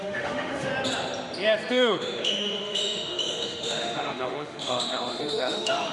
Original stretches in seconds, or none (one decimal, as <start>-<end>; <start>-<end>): 0.7-1.7